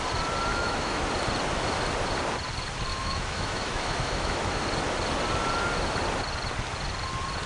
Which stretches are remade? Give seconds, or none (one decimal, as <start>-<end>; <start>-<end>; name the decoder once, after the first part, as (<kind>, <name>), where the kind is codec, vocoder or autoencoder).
0.5-1.0 (autoencoder, DAC-VAE); 2.9-4.6